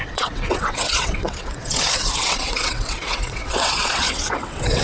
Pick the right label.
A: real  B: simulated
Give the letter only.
B